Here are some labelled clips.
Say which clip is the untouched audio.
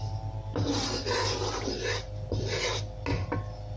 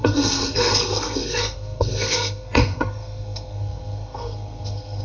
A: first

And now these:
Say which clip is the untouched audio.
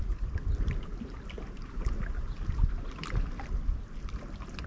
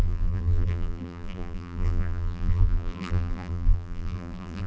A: first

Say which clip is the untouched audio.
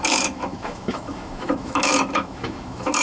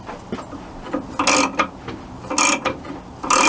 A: second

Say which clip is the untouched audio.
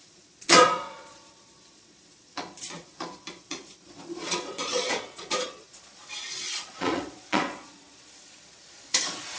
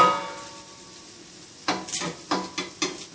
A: second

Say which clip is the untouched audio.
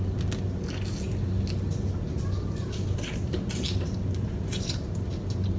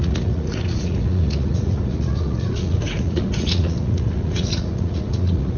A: first